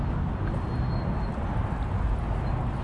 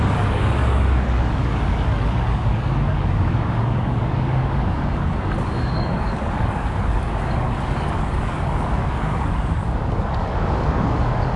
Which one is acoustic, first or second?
first